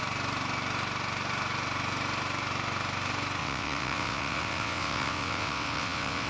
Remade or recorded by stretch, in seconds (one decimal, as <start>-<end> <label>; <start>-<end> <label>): 0.0-3.4 recorded; 3.4-6.3 remade

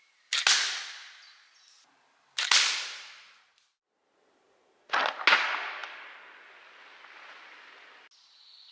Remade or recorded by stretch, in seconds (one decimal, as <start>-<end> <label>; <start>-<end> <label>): 0.0-8.7 recorded